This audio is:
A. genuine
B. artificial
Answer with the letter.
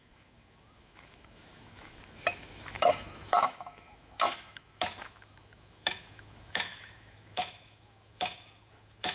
B